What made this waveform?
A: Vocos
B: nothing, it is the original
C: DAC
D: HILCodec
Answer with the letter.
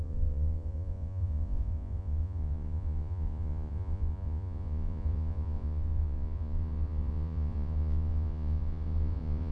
A